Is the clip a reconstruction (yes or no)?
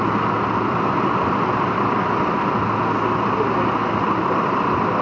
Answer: no